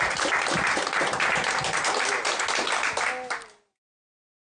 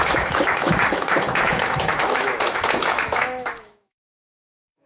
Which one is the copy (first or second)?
second